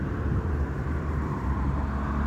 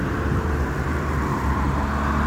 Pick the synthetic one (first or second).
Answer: first